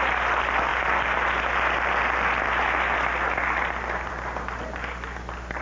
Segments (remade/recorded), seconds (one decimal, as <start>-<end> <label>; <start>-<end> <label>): 0.0-5.6 recorded